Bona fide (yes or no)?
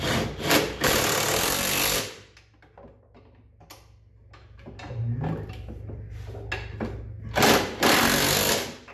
yes